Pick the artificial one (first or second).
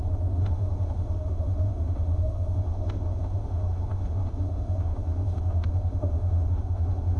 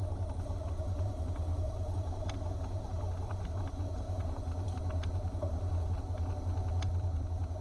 first